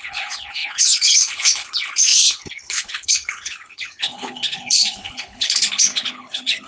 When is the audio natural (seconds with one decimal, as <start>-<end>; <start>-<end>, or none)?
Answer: none